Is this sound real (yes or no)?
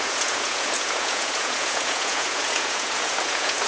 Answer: no